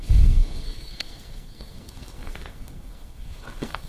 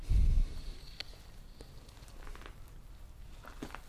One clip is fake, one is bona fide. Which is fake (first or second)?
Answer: first